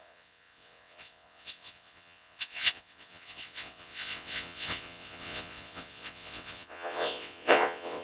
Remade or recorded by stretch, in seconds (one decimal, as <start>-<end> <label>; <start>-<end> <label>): 0.0-8.0 remade